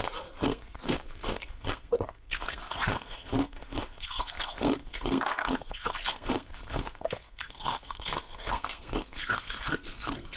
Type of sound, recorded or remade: remade